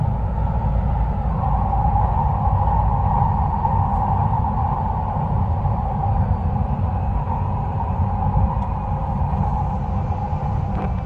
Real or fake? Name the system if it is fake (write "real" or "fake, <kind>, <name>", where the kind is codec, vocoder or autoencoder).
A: real